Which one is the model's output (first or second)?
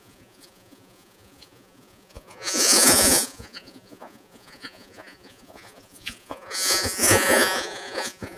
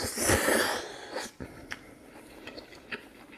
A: first